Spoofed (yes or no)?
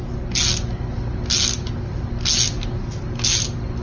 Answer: no